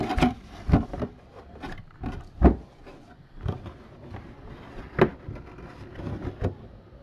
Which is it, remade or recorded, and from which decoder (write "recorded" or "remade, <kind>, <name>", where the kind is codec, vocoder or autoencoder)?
recorded